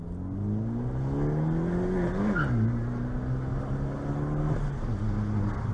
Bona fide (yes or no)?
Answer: yes